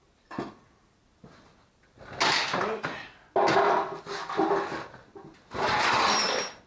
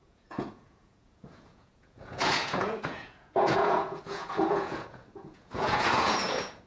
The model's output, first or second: second